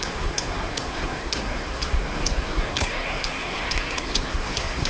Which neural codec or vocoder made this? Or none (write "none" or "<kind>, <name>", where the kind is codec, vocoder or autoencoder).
codec, SNAC